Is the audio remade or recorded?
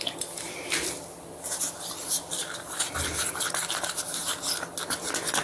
recorded